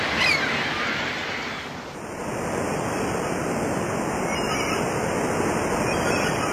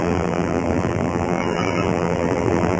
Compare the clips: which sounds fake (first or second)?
second